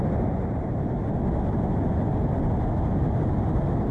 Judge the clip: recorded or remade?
recorded